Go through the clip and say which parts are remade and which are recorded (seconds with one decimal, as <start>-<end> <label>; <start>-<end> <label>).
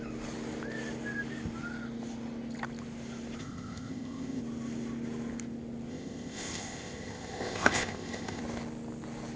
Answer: 0.0-3.4 recorded; 3.4-4.4 remade; 4.4-5.9 recorded; 5.9-8.4 remade; 8.4-9.4 recorded